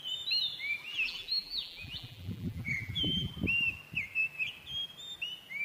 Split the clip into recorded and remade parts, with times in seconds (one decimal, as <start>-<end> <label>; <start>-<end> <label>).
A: 0.0-0.9 recorded; 0.9-3.3 remade; 3.3-5.6 recorded